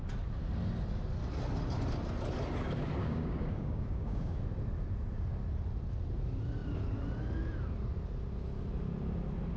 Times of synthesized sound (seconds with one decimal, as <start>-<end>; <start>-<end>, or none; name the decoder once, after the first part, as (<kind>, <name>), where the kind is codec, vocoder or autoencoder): 3.0-4.4 (codec, DAC)